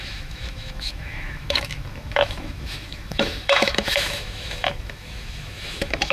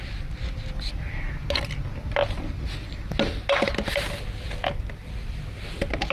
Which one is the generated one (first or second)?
first